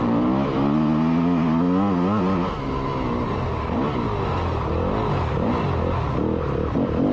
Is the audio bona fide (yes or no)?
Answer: yes